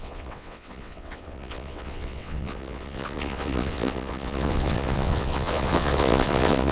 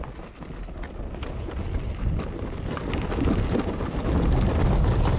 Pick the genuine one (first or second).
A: second